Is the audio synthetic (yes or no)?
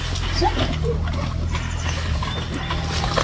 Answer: no